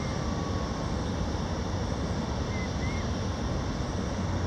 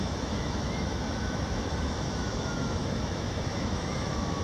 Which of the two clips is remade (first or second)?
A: second